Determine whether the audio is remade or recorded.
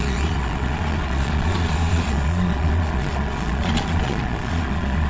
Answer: remade